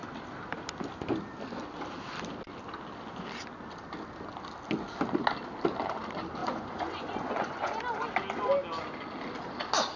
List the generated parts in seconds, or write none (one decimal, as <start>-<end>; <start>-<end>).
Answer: 6.4-7.8